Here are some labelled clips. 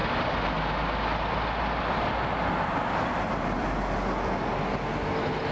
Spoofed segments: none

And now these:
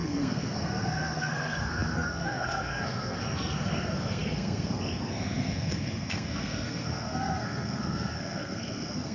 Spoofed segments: 0.0-9.1

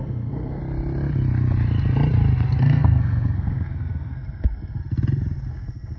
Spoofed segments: 0.0-0.6; 2.6-4.8; 5.5-6.0